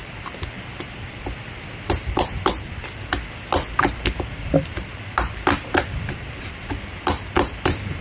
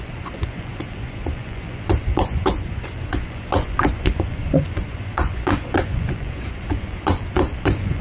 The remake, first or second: second